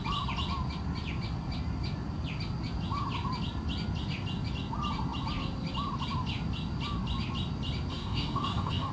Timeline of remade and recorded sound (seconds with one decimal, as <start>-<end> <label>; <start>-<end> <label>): 0.0-7.9 recorded; 7.9-8.9 remade

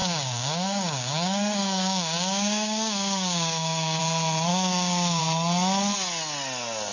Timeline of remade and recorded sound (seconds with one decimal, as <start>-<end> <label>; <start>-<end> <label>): 0.0-4.0 remade; 4.0-4.5 recorded; 4.5-5.2 remade; 5.2-6.9 recorded